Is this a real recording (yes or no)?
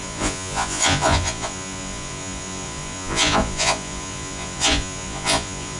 no